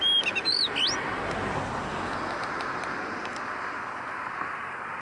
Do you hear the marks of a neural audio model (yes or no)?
no